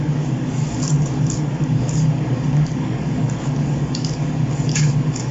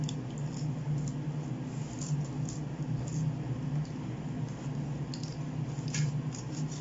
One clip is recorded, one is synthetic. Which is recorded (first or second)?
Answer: second